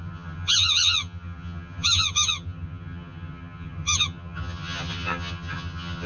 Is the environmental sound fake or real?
fake